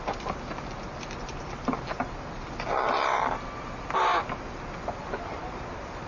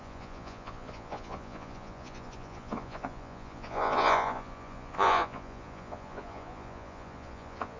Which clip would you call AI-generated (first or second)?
second